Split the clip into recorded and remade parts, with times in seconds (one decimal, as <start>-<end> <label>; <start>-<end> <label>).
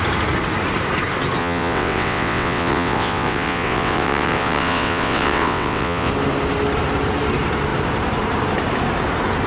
0.0-1.4 recorded; 1.4-6.1 remade; 6.1-9.5 recorded